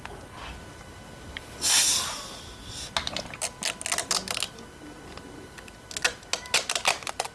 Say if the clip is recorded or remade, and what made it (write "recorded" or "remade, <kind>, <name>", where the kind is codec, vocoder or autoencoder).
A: recorded